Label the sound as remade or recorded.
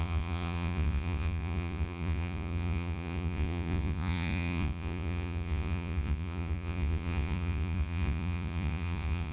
remade